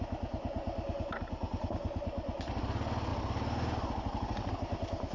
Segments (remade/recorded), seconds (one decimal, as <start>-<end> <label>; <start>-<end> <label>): 0.0-5.1 recorded